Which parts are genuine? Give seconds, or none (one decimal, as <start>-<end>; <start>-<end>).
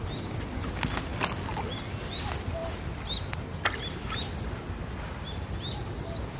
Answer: 0.0-6.4